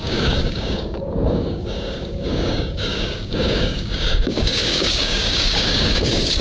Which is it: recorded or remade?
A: remade